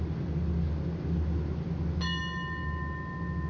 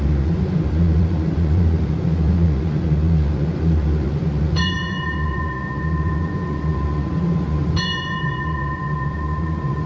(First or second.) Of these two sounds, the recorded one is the first